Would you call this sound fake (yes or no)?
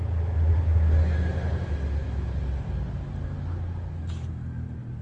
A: no